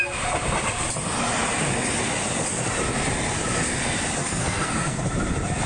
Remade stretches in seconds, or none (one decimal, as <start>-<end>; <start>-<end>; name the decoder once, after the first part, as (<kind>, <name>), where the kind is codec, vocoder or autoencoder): 4.2-5.0 (codec, SNAC)